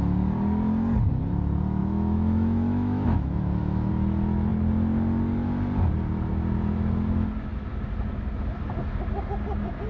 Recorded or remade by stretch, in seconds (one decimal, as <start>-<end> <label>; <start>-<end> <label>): 0.0-1.8 recorded; 1.8-3.9 remade; 3.9-9.9 recorded